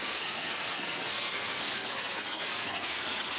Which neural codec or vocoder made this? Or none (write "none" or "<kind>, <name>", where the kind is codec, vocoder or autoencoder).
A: codec, SNAC